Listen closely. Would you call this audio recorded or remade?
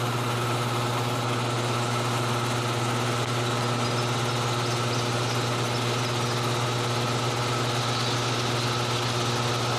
recorded